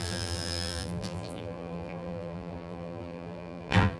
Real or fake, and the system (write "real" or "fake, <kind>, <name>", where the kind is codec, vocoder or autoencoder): fake, vocoder, BigVGAN v2